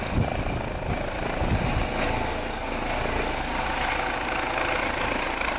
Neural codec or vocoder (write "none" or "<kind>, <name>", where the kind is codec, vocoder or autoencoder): none